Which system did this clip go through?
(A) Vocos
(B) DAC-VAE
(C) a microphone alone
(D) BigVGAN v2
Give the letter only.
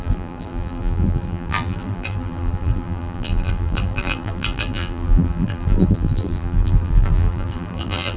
D